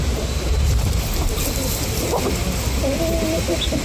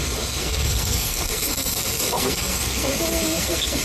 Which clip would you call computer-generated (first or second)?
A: second